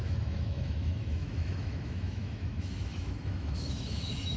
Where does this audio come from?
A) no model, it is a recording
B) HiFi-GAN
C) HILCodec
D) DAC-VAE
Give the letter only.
D